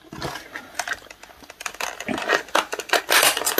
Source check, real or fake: real